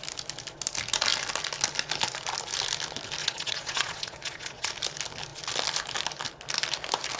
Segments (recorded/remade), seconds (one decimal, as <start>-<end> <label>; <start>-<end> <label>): 0.0-3.2 recorded; 3.2-4.7 remade; 4.7-7.2 recorded